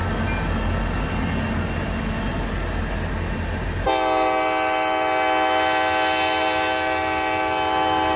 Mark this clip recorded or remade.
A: recorded